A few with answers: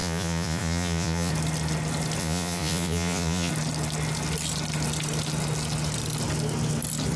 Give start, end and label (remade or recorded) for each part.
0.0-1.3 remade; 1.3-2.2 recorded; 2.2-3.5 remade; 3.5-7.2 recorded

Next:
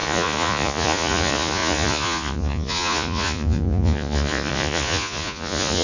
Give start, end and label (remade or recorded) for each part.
0.0-5.8 remade

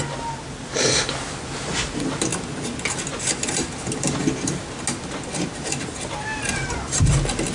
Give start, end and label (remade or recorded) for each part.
0.0-7.5 recorded

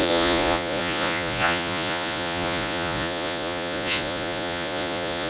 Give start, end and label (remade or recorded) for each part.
0.0-5.3 remade

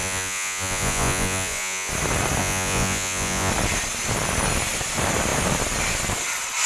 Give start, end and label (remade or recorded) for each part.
0.0-1.9 remade; 1.9-2.4 recorded; 2.4-3.5 remade; 3.5-6.7 recorded